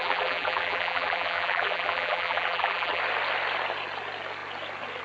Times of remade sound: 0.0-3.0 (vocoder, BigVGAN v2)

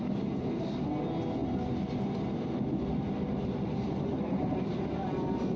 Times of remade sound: none

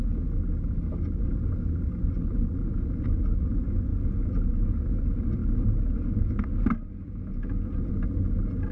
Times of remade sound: none